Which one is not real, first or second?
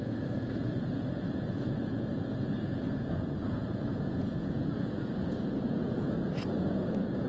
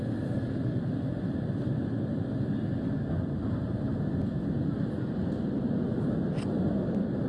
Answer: first